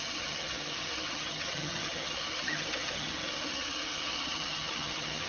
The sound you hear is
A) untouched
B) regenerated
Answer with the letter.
B